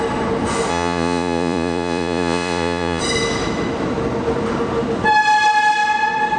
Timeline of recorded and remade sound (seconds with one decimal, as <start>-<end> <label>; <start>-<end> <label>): 0.0-0.7 recorded; 0.7-3.0 remade; 3.0-6.4 recorded